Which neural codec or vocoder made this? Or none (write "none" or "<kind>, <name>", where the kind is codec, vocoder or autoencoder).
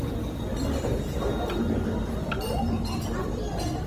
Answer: none